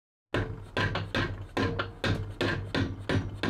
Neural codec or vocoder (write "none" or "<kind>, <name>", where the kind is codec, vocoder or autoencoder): none